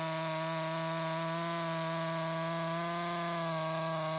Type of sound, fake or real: real